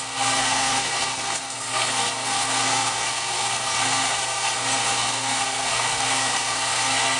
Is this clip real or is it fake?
fake